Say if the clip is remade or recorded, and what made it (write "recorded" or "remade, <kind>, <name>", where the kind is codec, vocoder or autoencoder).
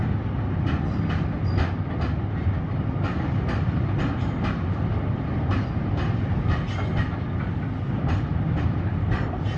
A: recorded